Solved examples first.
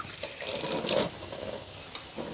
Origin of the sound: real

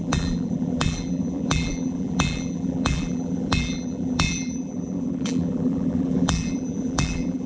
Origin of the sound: fake